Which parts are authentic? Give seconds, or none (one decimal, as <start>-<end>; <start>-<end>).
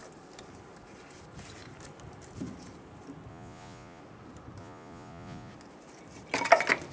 0.0-3.3; 4.0-4.6; 5.5-6.9